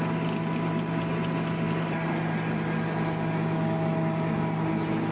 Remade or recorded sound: recorded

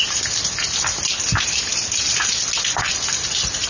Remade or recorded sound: recorded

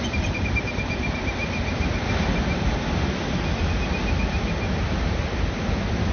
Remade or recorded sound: recorded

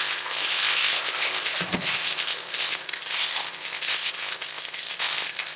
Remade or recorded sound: remade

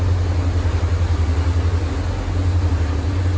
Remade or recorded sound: recorded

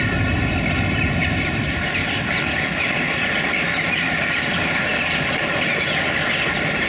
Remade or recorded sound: recorded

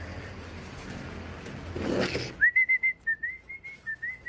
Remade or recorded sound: recorded